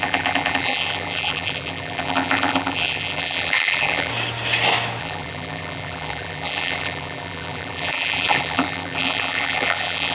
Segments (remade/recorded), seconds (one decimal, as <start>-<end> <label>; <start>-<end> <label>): 0.0-4.1 remade; 4.1-5.0 recorded; 5.0-10.1 remade